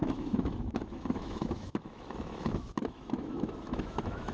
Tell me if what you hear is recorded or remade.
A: remade